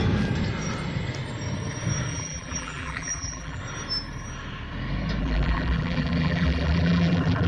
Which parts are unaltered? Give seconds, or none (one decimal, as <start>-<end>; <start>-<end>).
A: 0.0-2.1; 3.6-5.2